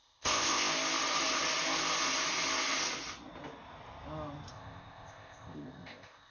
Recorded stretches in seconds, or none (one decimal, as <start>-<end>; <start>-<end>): 0.7-4.5